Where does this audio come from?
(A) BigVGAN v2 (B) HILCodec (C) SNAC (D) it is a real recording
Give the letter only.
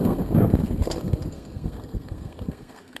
C